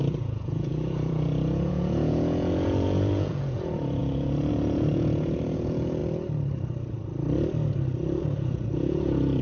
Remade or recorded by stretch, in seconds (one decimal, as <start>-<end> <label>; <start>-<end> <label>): 0.0-6.0 remade; 6.0-8.2 recorded; 8.2-9.4 remade